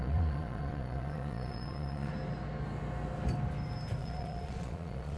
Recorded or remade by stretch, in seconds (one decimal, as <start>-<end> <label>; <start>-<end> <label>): 0.0-2.1 remade; 2.1-4.0 recorded; 4.0-5.2 remade